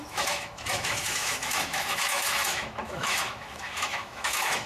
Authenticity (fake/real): fake